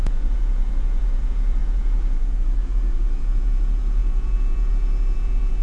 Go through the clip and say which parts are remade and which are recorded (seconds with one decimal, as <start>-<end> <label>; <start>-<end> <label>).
0.0-5.6 remade